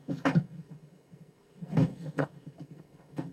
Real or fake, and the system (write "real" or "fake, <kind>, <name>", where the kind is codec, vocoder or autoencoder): fake, codec, SNAC